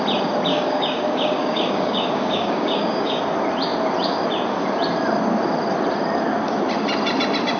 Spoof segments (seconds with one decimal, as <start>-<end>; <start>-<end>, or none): 0.5-3.2